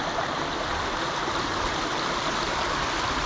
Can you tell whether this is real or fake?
real